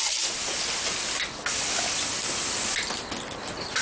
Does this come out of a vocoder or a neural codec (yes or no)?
no